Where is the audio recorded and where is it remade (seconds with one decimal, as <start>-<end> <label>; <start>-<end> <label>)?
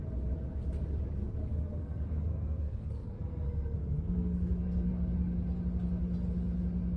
0.0-1.2 recorded; 1.2-4.9 remade; 4.9-7.0 recorded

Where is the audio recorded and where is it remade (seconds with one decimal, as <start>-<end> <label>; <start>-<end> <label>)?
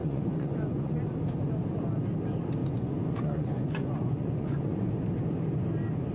0.0-1.0 remade; 1.0-2.6 recorded; 2.6-4.9 remade; 4.9-6.1 recorded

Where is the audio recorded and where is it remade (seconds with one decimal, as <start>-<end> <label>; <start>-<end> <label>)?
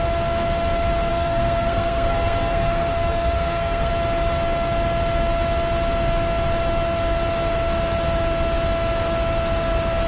0.0-1.1 recorded; 1.1-3.9 remade; 3.9-10.1 recorded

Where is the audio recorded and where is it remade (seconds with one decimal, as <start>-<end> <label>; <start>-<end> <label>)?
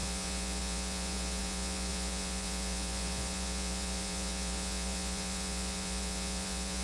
0.0-6.8 remade